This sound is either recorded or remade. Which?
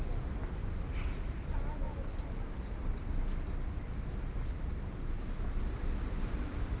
recorded